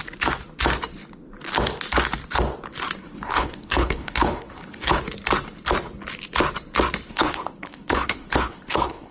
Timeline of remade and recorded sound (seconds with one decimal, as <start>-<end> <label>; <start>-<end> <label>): 0.0-3.0 recorded; 3.0-5.0 remade; 5.0-7.1 recorded; 7.1-9.1 remade